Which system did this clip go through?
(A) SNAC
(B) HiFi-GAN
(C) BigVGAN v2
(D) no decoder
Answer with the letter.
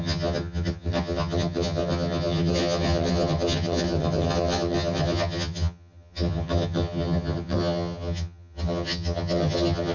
B